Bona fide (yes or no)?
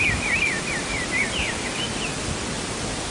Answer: yes